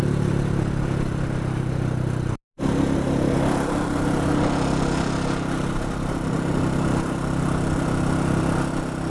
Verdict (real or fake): real